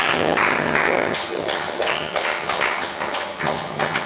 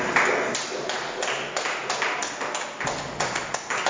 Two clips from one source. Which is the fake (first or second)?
first